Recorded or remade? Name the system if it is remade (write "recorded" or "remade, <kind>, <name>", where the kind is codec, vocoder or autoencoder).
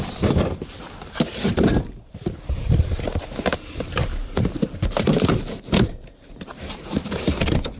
remade, vocoder, BigVGAN v2